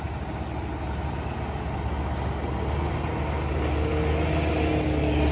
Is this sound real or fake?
real